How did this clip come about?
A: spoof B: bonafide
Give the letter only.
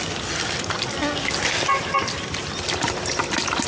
B